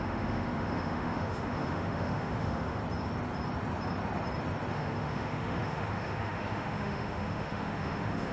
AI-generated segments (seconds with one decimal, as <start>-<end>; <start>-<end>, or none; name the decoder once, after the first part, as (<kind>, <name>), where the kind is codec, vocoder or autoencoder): 0.0-2.8 (autoencoder, DAC-VAE); 4.7-8.3